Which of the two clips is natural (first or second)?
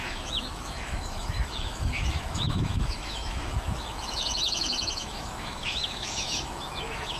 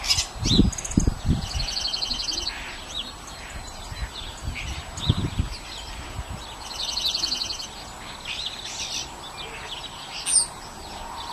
second